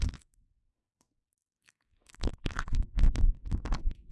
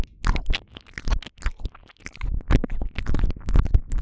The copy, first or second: first